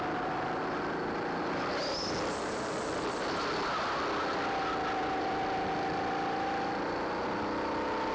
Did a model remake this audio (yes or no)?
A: no